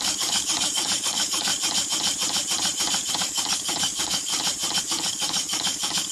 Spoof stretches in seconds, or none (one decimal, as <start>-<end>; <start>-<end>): 0.0-1.5; 3.1-4.3; 4.8-6.1